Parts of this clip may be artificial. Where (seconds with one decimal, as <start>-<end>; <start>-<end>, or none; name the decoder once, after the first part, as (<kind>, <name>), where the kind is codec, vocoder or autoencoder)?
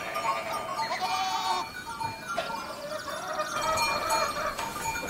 none